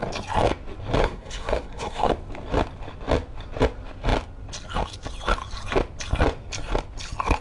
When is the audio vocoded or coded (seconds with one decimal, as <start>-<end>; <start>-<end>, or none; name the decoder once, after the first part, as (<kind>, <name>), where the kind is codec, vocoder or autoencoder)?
1.0-2.1 (codec, SNAC)